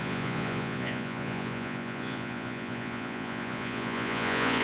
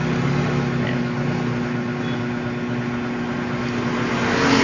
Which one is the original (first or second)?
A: second